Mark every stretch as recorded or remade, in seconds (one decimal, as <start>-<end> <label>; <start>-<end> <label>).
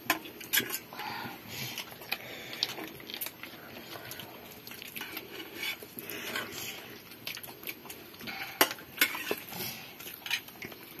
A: 0.0-11.0 recorded